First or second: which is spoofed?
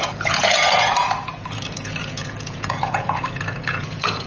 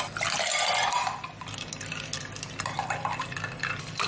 first